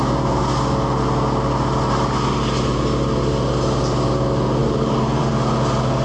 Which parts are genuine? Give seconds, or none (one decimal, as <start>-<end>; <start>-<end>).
0.0-4.6; 5.3-6.0